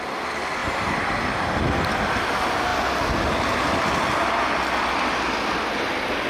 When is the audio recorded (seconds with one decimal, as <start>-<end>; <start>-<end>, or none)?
0.0-0.6; 1.6-6.3